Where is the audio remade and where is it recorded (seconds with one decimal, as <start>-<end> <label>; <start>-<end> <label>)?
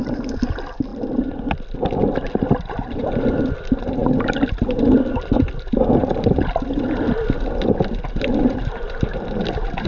0.0-9.9 recorded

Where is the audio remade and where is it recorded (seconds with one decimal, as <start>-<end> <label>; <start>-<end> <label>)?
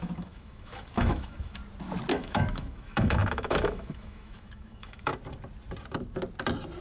0.0-1.6 remade; 1.6-2.1 recorded; 2.1-5.1 remade; 5.1-6.8 recorded